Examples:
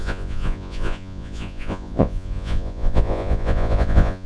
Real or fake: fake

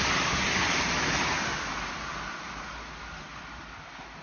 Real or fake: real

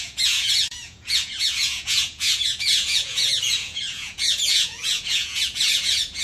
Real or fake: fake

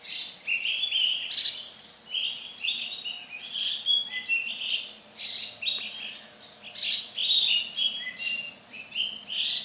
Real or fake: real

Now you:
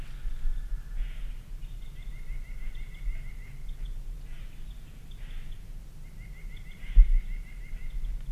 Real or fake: real